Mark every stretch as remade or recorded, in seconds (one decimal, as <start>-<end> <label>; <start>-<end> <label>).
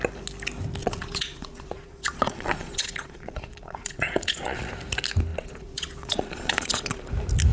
0.0-0.8 recorded; 0.8-4.7 remade; 4.7-5.3 recorded; 5.3-7.1 remade; 7.1-7.5 recorded